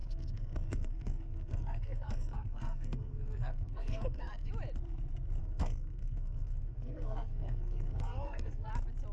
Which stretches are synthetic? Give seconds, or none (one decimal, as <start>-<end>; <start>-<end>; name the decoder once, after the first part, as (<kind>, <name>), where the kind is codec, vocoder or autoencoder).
0.0-4.5 (codec, SNAC); 5.4-8.7